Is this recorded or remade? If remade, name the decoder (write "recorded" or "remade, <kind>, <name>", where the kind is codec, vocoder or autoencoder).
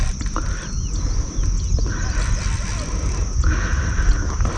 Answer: recorded